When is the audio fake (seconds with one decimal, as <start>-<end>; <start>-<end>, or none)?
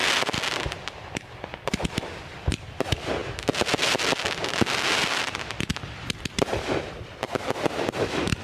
5.7-6.8